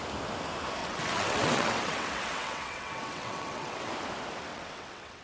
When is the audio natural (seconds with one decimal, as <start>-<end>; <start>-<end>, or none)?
0.0-0.8; 3.9-4.5